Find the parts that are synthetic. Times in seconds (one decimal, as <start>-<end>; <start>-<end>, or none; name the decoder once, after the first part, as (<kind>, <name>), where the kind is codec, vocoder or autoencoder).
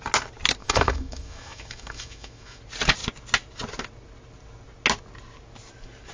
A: 0.6-2.6 (autoencoder, DAC-VAE)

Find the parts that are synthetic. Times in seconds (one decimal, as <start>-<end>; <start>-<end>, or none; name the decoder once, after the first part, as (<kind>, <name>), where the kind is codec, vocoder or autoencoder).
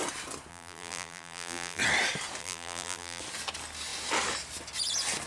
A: 0.5-1.8 (vocoder, BigVGAN v2); 2.4-3.2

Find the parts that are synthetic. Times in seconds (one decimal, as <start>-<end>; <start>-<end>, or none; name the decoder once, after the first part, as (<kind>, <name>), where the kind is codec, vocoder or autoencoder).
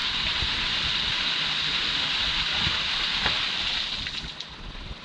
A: 0.0-3.0 (vocoder, BigVGAN v2)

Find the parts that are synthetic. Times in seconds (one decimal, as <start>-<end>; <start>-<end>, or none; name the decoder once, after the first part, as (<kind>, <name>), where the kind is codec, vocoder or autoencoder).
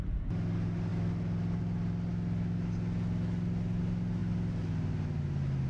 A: none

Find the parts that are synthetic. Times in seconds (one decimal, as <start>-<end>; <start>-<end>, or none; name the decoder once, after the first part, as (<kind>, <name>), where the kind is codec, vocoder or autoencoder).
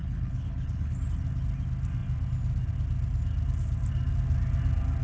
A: 0.0-0.9 (codec, HILCodec)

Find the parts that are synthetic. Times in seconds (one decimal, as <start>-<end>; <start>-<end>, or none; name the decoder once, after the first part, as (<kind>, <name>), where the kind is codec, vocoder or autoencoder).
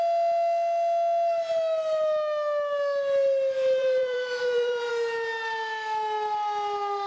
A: 3.8-4.9 (vocoder, BigVGAN v2)